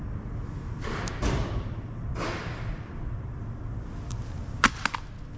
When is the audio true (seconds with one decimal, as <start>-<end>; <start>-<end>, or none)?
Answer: 0.0-1.2; 4.4-5.4